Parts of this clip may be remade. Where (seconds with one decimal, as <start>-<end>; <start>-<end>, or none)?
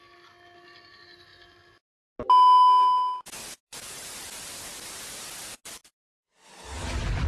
none